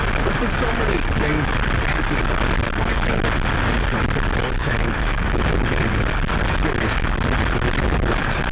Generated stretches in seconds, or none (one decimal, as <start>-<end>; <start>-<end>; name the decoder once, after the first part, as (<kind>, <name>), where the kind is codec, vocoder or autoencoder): 4.6-5.4 (autoencoder, DAC-VAE)